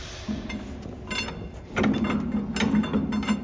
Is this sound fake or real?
real